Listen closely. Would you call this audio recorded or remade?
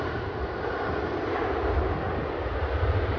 recorded